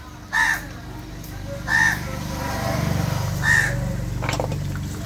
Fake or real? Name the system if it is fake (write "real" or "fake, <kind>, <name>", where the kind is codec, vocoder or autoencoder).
real